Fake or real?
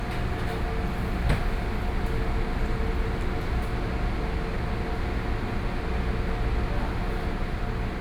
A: real